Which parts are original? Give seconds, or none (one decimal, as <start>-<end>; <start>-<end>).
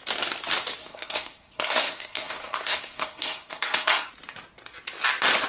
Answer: 0.0-0.8; 4.1-5.5